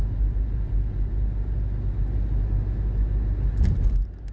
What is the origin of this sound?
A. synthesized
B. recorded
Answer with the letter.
B